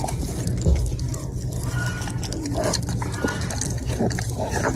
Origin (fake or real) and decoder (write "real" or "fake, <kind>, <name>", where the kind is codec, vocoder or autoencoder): real